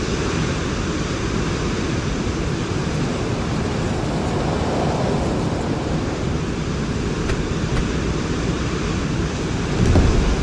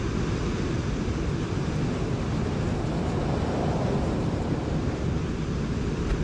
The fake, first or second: first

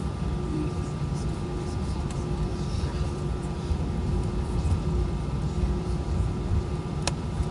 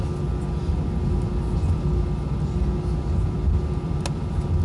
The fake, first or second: first